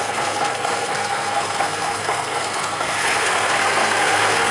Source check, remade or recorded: remade